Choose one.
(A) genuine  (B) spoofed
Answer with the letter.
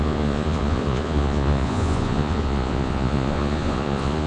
B